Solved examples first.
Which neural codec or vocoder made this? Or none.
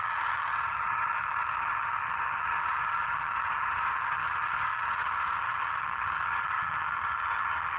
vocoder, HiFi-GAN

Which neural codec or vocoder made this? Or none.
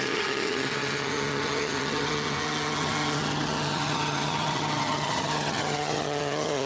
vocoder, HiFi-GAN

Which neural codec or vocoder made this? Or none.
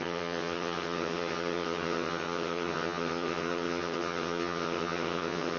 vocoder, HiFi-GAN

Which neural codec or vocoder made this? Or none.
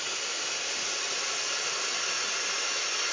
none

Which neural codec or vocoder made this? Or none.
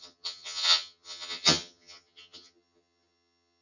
vocoder, HiFi-GAN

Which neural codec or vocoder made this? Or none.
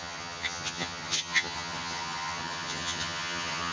vocoder, HiFi-GAN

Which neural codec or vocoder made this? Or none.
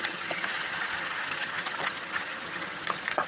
vocoder, HiFi-GAN